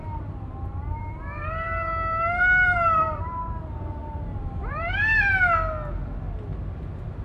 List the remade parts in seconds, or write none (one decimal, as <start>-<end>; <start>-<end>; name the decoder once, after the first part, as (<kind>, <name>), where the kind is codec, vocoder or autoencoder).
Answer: 0.0-3.6 (vocoder, BigVGAN v2); 4.0-5.3